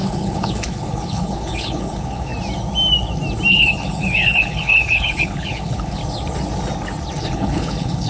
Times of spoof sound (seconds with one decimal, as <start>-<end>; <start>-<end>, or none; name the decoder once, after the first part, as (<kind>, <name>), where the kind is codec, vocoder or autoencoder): 0.0-2.3 (codec, HILCodec); 3.5-6.0; 7.2-8.1